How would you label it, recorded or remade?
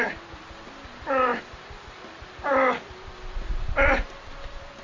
recorded